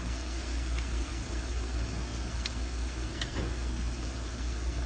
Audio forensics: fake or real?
fake